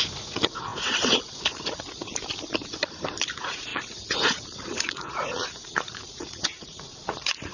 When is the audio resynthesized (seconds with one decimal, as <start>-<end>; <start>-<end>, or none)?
0.0-2.1; 3.3-7.5

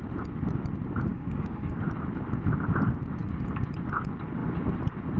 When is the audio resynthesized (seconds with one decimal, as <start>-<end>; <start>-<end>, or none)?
1.1-1.8; 3.2-3.7

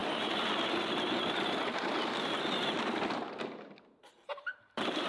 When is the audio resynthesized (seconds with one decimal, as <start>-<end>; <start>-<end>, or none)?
4.3-5.1